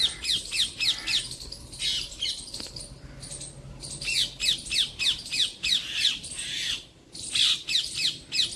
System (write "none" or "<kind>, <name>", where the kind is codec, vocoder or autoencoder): none